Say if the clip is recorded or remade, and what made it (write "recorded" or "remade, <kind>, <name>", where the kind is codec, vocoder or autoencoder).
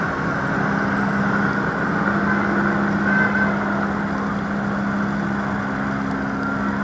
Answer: recorded